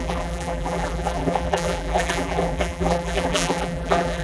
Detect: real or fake fake